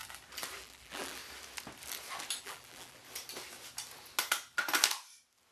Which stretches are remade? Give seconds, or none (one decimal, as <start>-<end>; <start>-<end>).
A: 0.6-1.2; 2.4-3.0